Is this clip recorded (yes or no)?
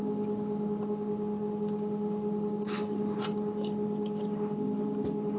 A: yes